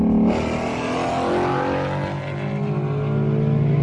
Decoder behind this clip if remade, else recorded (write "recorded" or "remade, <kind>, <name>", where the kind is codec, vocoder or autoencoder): recorded